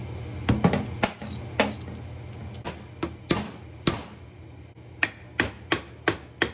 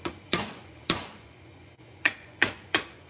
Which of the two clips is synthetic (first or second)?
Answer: second